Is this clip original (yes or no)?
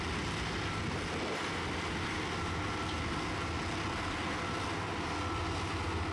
yes